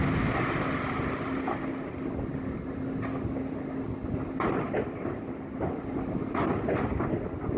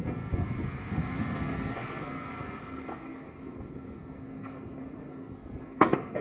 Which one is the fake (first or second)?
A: second